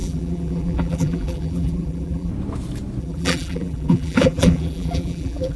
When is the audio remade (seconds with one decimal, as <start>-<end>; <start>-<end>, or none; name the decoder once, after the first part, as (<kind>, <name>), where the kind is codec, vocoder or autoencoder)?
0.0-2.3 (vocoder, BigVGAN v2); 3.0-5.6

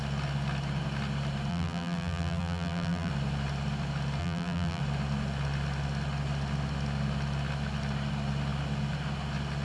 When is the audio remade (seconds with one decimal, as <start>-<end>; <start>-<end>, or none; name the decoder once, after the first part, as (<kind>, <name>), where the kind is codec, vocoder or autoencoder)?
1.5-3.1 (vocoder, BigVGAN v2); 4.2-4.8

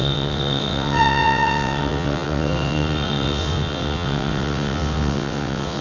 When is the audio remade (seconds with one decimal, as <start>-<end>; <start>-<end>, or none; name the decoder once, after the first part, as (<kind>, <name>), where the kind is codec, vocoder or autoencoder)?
0.0-5.8 (vocoder, WaveNeXt)

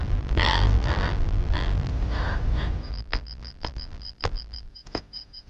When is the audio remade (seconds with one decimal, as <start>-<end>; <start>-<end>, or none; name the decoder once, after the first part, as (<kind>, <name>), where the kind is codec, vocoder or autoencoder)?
0.0-1.9 (vocoder, BigVGAN v2); 2.9-4.7

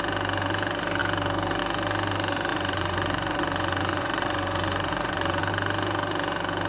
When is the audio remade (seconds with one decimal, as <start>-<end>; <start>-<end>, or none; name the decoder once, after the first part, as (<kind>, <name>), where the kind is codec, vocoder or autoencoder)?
2.5-5.4 (vocoder, Vocos)